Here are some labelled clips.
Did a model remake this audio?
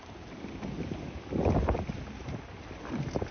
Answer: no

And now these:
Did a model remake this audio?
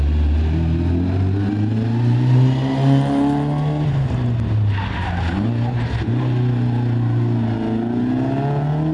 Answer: no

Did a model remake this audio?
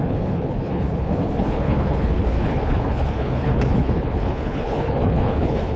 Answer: yes